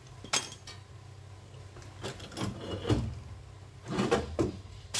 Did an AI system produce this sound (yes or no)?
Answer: no